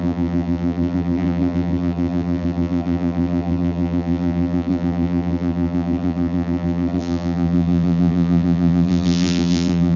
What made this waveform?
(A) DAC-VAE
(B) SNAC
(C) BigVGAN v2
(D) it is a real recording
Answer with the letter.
C